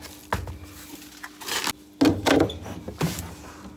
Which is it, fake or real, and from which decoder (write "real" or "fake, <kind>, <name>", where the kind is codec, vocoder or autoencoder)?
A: real